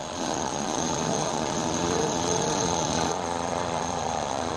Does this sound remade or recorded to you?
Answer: remade